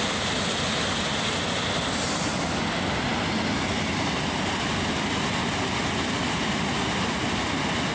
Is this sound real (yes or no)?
yes